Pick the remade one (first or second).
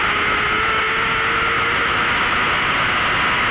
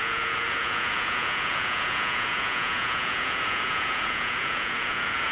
second